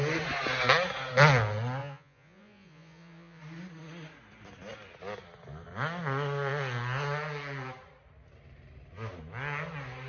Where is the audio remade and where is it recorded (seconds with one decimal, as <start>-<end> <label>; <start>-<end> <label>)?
0.0-1.8 recorded; 1.8-3.4 remade; 3.4-10.1 recorded